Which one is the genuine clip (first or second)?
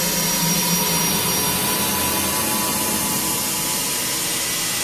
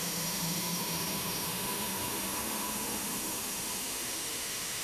first